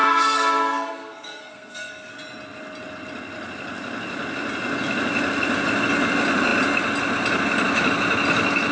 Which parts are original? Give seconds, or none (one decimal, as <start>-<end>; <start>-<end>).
2.1-8.7

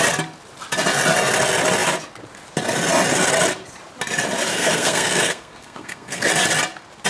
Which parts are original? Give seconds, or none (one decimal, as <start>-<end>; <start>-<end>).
0.0-4.5; 6.3-7.1